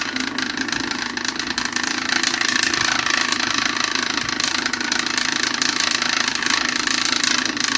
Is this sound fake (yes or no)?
no